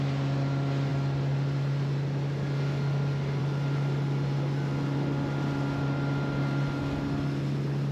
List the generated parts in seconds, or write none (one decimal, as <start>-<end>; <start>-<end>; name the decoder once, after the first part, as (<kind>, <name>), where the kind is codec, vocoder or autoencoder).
none